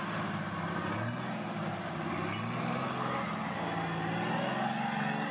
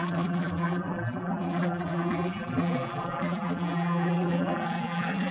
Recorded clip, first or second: first